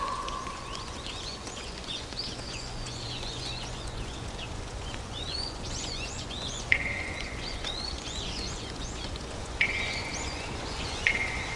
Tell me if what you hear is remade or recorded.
remade